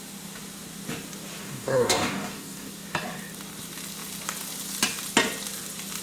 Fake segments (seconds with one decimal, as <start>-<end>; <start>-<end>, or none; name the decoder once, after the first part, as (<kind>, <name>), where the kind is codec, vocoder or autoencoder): 1.4-2.7 (codec, DAC)